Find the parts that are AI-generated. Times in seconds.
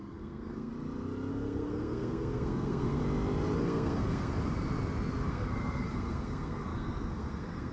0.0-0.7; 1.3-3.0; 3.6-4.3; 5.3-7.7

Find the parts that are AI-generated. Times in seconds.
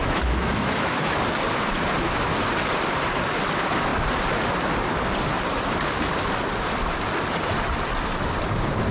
0.0-1.1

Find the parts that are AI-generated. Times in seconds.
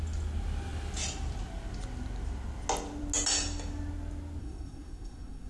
4.4-5.5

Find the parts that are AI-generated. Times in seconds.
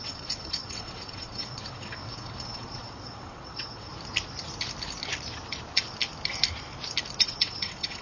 0.0-3.9; 7.2-8.0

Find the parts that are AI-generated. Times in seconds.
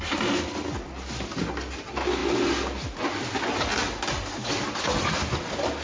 none